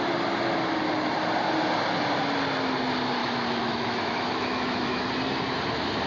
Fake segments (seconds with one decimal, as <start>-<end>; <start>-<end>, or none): 3.2-5.0